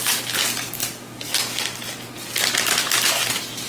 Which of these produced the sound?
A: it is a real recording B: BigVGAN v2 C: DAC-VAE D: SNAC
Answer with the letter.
A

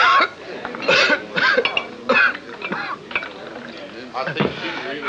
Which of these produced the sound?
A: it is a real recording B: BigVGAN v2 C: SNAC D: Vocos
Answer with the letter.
A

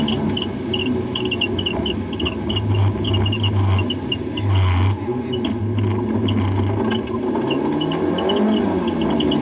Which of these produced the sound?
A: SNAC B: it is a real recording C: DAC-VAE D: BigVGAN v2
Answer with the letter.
B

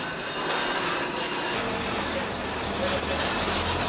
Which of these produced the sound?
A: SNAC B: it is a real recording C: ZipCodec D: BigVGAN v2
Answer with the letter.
B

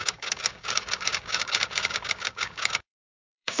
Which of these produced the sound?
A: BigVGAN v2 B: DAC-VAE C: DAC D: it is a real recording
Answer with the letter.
C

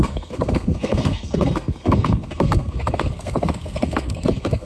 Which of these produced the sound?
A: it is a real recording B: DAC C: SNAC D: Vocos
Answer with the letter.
C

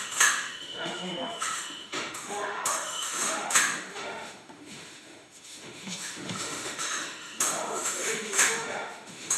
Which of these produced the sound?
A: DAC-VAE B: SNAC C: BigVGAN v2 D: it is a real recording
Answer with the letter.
A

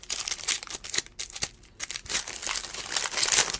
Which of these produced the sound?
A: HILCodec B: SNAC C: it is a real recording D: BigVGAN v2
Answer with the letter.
C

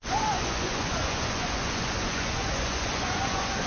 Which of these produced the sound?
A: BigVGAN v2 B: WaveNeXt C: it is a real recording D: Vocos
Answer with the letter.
D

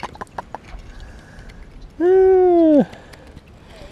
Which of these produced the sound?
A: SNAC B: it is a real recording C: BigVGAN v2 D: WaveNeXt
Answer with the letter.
B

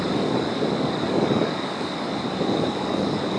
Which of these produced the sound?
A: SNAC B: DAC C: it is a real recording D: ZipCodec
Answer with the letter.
B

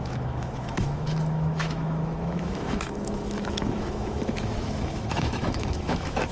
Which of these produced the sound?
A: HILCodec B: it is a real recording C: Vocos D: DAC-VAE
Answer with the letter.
D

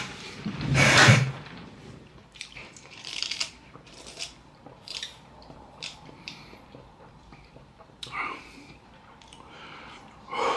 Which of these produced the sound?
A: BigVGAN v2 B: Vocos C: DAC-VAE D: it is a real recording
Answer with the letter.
A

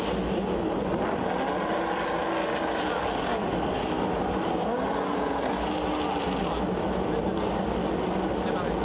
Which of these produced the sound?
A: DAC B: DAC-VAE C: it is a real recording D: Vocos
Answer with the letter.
C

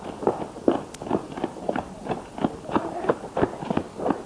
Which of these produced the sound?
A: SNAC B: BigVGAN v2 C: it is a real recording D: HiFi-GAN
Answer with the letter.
B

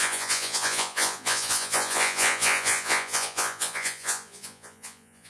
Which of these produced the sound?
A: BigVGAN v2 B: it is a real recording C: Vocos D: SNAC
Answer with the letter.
C